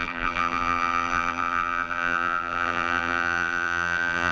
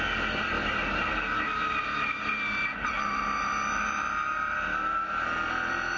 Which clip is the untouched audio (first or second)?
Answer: second